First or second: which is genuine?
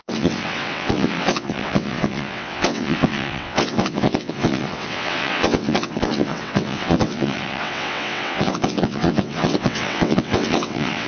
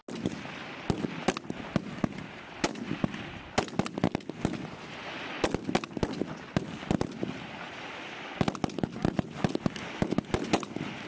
second